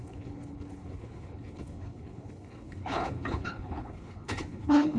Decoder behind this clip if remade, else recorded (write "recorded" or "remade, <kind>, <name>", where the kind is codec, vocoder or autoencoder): remade, codec, HILCodec